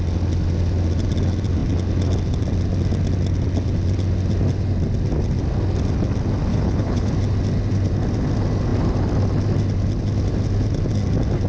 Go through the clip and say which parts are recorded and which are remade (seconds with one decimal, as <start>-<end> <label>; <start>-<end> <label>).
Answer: 0.0-6.5 recorded; 6.5-7.1 remade; 7.1-11.5 recorded